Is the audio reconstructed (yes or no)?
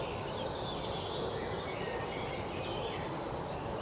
no